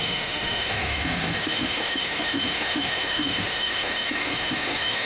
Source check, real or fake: fake